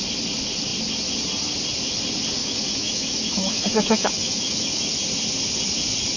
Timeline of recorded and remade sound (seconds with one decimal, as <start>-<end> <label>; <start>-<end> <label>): 0.0-2.4 recorded; 2.4-4.9 remade; 4.9-6.2 recorded